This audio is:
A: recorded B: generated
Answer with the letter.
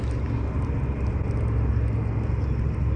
A